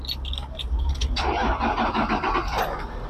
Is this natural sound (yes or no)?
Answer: yes